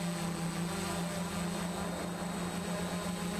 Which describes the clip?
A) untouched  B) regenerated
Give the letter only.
A